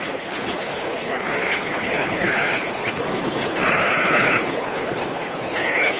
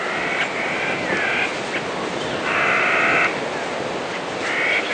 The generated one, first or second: first